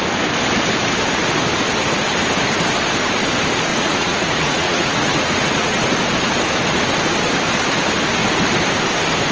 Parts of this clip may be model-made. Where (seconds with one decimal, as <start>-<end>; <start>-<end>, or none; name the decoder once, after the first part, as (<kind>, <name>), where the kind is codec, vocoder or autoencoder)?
3.7-5.8 (vocoder, Vocos)